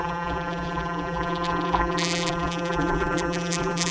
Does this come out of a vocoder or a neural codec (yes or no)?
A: yes